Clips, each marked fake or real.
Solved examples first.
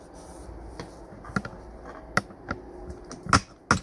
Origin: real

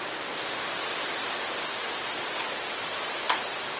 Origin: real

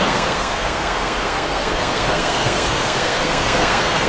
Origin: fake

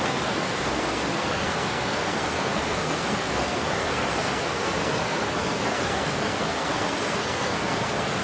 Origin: fake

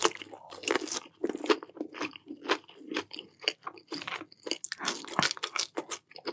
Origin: real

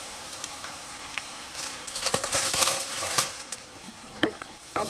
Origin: fake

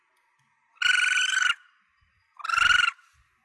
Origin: real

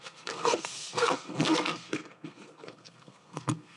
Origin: fake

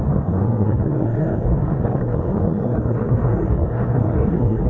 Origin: fake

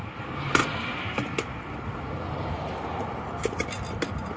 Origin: real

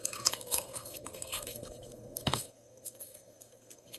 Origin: fake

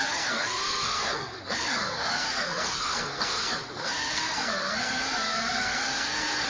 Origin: fake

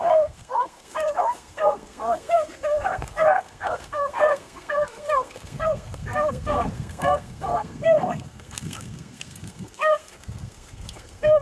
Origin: fake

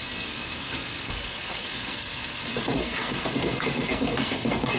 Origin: fake